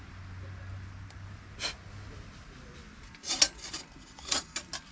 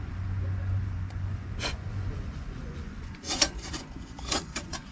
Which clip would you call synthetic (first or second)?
second